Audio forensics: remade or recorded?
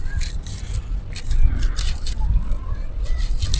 recorded